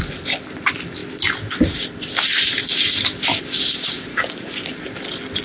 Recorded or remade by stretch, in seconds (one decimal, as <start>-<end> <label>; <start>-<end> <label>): 0.0-4.1 recorded; 4.1-4.7 remade; 4.7-5.4 recorded